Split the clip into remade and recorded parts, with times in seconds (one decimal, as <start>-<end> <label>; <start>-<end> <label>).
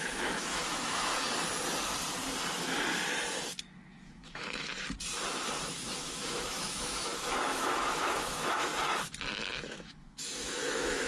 0.0-1.1 remade; 1.1-3.6 recorded; 3.6-4.7 remade; 4.7-5.7 recorded; 5.7-8.7 remade; 8.7-9.3 recorded; 9.3-11.1 remade